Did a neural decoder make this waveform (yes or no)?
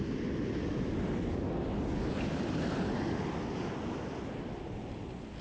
no